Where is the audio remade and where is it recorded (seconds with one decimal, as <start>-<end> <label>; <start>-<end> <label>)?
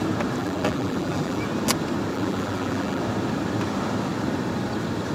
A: 0.0-0.4 recorded; 0.4-1.4 remade; 1.4-2.1 recorded; 2.1-3.0 remade; 3.0-5.1 recorded